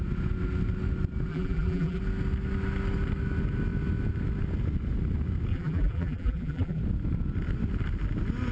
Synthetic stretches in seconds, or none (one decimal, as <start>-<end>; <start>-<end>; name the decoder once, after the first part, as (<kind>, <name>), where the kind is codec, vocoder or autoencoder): 1.3-2.0 (vocoder, BigVGAN v2); 5.5-6.8